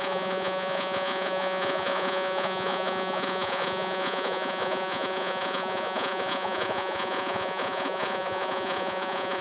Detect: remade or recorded remade